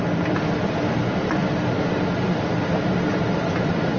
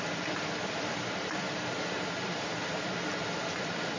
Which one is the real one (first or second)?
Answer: first